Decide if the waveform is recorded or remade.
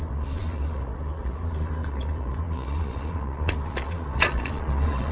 remade